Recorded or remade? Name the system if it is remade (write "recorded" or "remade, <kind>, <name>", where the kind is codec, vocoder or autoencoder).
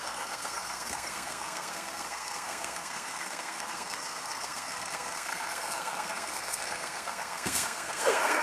remade, codec, SNAC